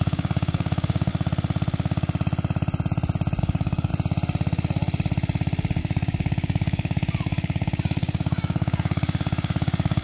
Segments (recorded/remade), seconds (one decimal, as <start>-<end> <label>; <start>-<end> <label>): 0.0-1.1 remade; 1.1-3.4 recorded; 3.4-3.9 remade; 3.9-5.8 recorded; 5.8-10.0 remade